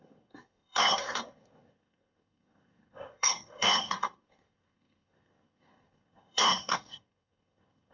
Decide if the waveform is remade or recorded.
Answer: remade